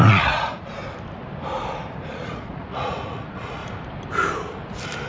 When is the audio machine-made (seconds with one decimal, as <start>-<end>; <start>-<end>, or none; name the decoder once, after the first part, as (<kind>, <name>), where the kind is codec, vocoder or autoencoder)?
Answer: 0.0-0.8 (vocoder, Vocos); 2.1-3.6